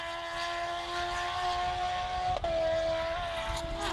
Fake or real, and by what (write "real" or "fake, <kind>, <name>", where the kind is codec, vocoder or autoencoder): real